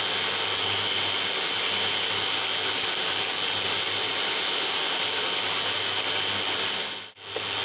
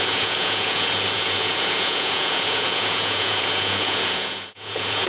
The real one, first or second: first